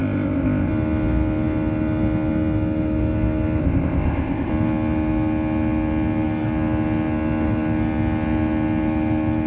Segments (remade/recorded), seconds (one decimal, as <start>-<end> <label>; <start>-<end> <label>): 0.0-0.7 remade; 0.7-3.6 recorded; 3.6-4.5 remade; 4.5-9.5 recorded